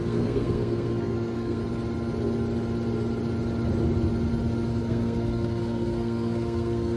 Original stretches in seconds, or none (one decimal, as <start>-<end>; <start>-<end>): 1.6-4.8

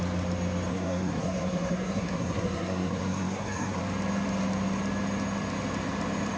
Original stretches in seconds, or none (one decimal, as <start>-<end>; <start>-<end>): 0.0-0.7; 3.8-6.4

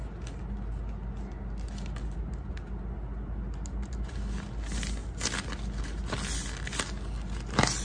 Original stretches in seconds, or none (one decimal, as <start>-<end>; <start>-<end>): 0.0-7.8

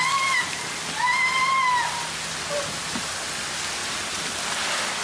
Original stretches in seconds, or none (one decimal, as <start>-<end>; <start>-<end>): 0.0-5.0